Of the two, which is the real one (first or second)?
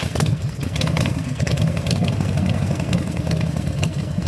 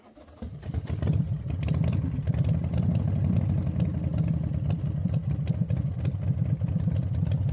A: second